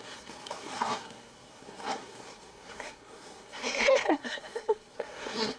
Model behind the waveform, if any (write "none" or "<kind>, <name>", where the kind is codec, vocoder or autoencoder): codec, SNAC